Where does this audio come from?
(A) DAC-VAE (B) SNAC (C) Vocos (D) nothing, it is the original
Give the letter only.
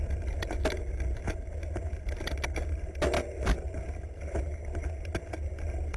D